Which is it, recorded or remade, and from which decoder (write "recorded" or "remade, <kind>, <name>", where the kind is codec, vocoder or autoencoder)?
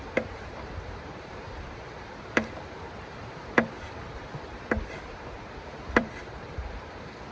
remade, vocoder, BigVGAN v2